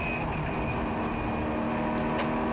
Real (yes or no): yes